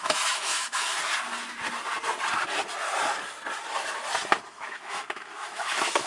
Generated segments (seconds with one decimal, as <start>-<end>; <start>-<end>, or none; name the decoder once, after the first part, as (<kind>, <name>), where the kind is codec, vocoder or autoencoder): 0.0-0.9 (autoencoder, DAC-VAE); 4.5-6.1